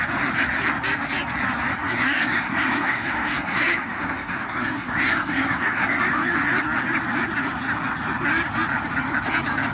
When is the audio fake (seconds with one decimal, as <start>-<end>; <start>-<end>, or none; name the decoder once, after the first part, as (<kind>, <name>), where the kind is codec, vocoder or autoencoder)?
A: 1.8-6.0 (codec, SNAC)